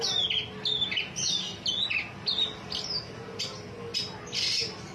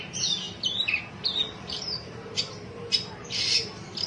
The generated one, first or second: second